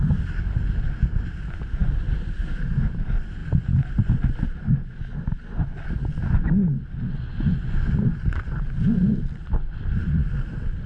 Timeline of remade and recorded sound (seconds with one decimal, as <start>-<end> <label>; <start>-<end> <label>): 0.0-1.8 recorded; 1.8-2.4 remade; 2.4-3.4 recorded; 3.4-4.7 remade; 4.7-10.9 recorded